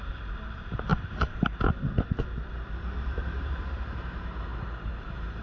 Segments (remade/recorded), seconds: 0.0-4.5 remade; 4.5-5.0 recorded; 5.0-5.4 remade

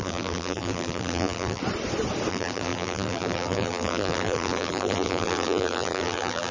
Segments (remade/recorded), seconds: 0.0-1.6 remade; 1.6-2.3 recorded; 2.3-6.5 remade